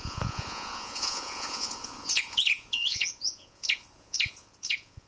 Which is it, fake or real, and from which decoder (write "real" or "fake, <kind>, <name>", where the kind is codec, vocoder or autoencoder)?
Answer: fake, vocoder, Vocos